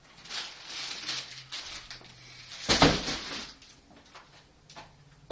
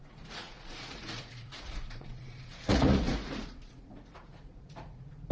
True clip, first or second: first